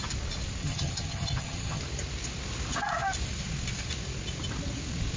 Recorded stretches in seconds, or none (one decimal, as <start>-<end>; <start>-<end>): 0.0-0.6; 1.8-5.2